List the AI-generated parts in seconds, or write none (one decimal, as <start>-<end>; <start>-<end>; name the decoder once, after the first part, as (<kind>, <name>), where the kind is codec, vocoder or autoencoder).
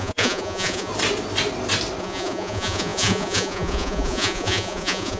0.0-0.9 (vocoder, Vocos); 2.0-5.2